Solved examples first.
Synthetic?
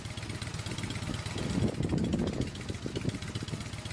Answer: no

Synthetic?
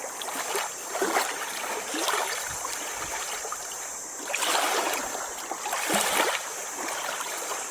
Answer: no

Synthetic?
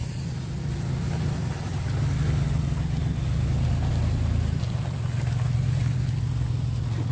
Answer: no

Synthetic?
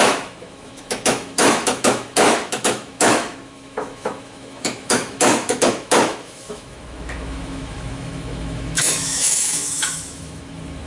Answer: yes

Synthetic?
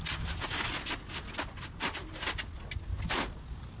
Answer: no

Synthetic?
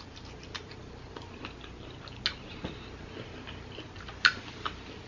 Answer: no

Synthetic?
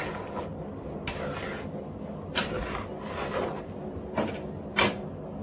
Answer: no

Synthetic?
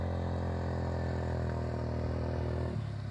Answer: no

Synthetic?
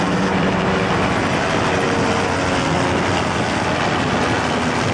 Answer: no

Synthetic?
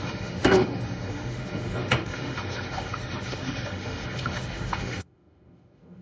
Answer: yes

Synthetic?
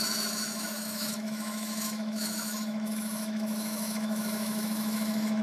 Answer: yes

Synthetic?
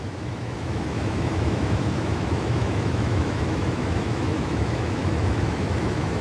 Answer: yes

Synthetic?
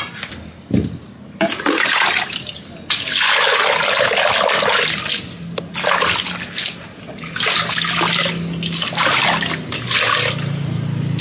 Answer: no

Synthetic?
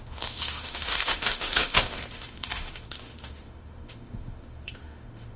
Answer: yes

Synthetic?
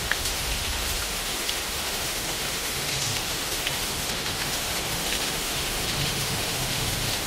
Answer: yes